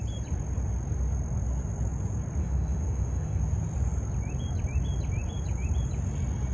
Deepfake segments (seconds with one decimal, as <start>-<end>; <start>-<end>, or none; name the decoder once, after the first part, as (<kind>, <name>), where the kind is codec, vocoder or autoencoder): 2.4-3.4 (autoencoder, DAC-VAE)